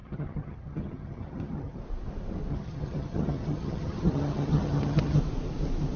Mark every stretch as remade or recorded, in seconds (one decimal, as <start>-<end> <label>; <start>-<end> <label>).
0.0-1.8 remade; 1.8-2.5 recorded; 2.5-5.2 remade; 5.2-6.0 recorded